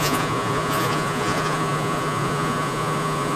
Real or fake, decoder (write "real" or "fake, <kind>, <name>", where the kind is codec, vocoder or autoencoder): fake, vocoder, Vocos